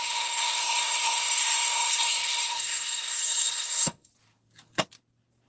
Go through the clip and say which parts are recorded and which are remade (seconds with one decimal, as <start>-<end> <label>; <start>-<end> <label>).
0.0-4.1 remade; 4.1-5.5 recorded